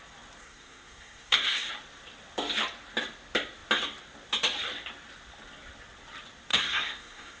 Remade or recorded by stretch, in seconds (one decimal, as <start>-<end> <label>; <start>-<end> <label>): 0.0-0.4 recorded; 0.4-1.7 remade; 1.7-6.5 recorded; 6.5-7.4 remade